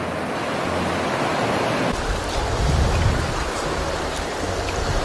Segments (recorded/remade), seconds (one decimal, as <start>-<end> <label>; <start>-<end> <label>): 0.0-5.0 recorded

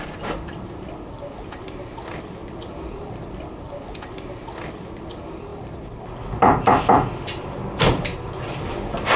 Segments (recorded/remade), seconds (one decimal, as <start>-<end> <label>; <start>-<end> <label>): 0.0-2.4 recorded; 2.4-3.7 remade; 3.7-5.5 recorded; 5.5-8.6 remade; 8.6-9.2 recorded

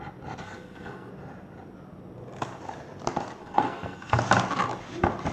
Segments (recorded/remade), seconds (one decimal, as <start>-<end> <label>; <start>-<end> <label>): 0.0-0.4 recorded; 0.4-1.1 remade; 1.1-3.4 recorded; 3.4-4.2 remade; 4.2-5.3 recorded

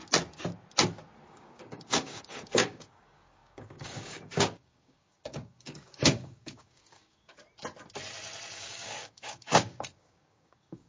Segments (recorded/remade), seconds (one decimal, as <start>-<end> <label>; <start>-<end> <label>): 0.0-1.3 recorded; 1.3-7.4 remade; 7.4-8.5 recorded; 8.5-10.9 remade

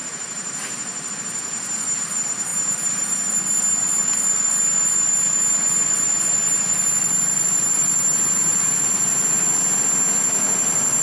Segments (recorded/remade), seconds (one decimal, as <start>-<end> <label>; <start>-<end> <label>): 0.0-11.0 recorded

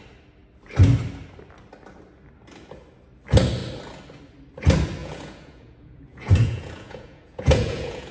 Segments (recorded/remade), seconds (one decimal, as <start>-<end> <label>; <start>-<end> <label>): 0.0-5.0 recorded; 5.0-8.1 remade

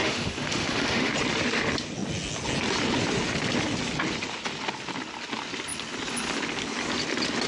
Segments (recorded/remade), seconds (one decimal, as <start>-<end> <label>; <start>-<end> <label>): 0.0-1.1 remade; 1.1-7.5 recorded

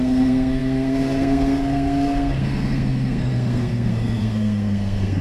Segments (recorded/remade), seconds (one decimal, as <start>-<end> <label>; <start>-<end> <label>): 0.0-5.2 remade